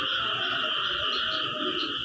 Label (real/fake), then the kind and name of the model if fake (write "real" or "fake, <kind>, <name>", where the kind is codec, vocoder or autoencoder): real